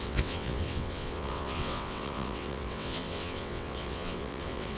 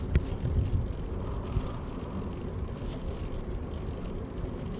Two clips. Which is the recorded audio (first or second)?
second